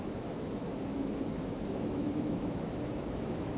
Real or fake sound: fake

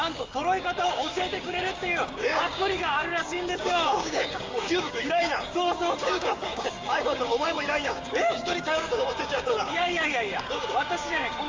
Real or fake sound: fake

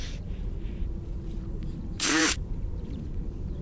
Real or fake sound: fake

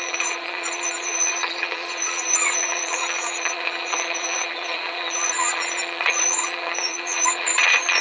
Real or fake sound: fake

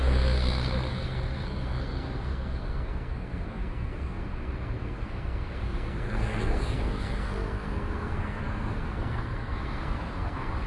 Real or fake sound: fake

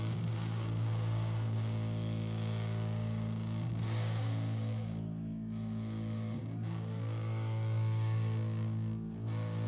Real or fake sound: fake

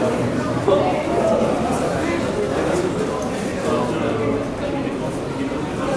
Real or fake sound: real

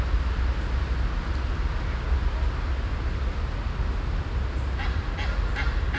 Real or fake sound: real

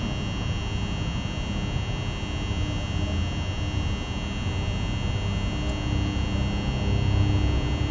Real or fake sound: real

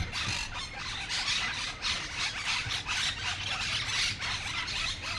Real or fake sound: real